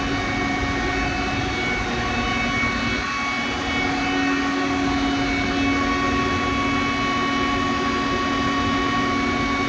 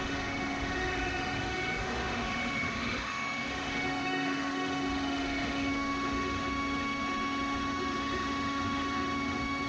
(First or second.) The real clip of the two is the first